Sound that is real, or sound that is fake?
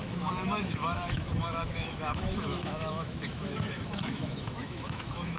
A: fake